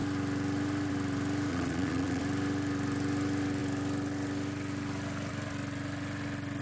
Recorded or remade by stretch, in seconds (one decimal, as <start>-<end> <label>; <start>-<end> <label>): 0.0-1.5 recorded; 1.5-2.2 remade; 2.2-6.6 recorded